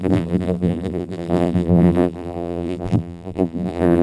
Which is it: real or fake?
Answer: fake